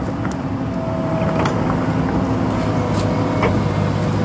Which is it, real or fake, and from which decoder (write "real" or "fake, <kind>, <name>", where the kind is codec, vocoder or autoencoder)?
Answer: real